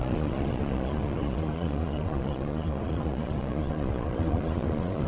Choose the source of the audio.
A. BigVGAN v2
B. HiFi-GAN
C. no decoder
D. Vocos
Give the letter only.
D